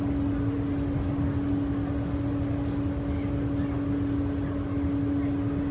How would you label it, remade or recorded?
recorded